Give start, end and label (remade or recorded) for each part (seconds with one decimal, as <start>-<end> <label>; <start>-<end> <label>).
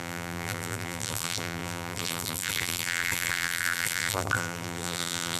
0.0-5.4 remade